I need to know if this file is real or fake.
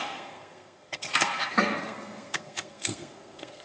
fake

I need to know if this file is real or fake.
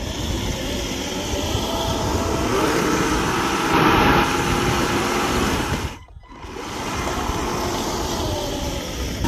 real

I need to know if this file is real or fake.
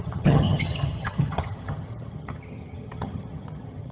fake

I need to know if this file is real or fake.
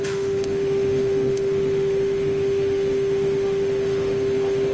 fake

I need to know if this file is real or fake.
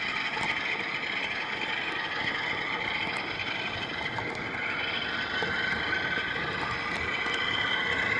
real